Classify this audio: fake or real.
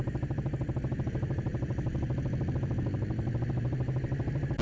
real